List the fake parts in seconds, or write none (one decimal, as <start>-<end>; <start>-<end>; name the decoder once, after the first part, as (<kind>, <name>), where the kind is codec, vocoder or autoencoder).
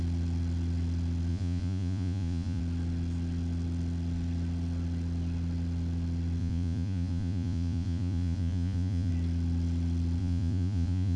1.3-2.6 (vocoder, Vocos); 6.4-9.1; 10.2-11.2